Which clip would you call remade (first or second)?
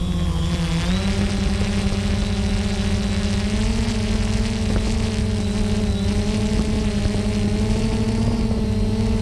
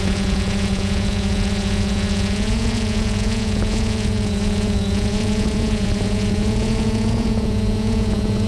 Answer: second